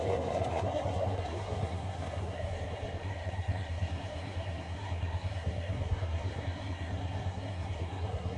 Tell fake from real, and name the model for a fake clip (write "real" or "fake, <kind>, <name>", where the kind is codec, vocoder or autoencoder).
fake, codec, SNAC